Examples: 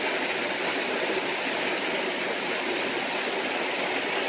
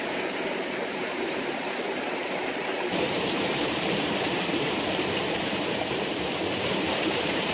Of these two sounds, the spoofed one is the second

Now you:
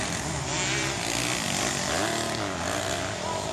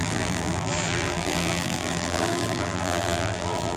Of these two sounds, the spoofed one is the second